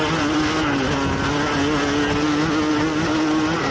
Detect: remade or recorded recorded